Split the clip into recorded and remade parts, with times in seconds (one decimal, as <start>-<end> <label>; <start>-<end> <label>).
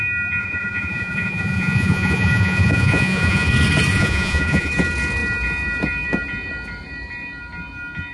0.0-0.4 recorded; 0.4-3.5 remade; 3.5-3.9 recorded; 3.9-4.7 remade; 4.7-8.1 recorded